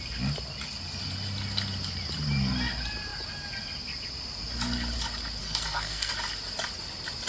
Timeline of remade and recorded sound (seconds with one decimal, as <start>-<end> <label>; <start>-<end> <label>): 0.0-5.4 recorded; 5.4-6.1 remade; 6.1-7.3 recorded